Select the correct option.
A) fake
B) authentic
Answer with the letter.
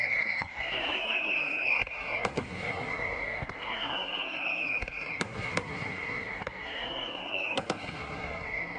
A